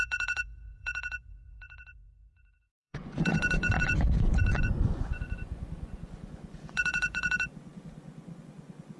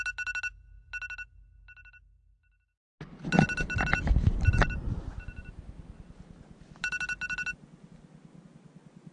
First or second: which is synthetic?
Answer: first